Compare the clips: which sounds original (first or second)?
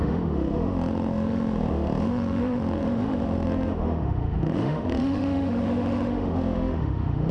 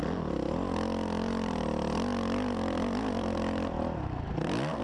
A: second